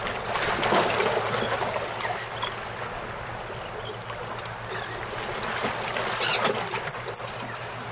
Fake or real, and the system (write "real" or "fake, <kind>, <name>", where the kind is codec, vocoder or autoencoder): real